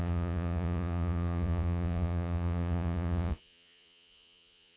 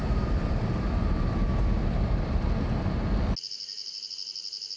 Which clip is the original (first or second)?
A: second